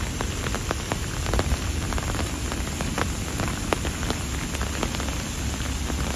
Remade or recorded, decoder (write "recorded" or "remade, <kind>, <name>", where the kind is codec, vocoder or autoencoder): recorded